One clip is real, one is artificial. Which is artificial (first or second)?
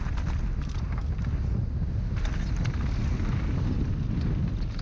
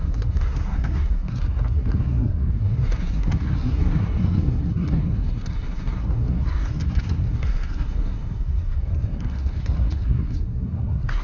second